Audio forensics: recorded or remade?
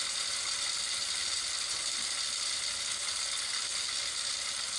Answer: recorded